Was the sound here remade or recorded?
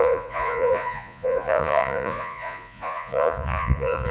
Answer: remade